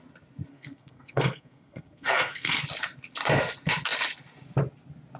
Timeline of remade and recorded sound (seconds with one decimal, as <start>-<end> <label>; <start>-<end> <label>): 0.0-0.5 recorded; 0.5-2.6 remade; 2.6-5.2 recorded